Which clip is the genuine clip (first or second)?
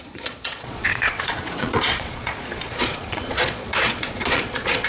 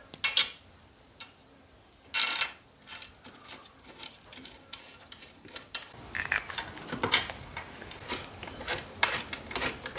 second